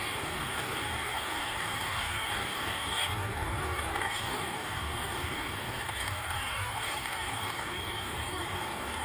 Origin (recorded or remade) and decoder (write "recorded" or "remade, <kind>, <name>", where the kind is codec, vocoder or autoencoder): remade, codec, DAC